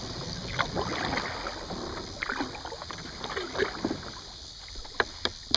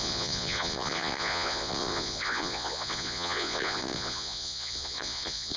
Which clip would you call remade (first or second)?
second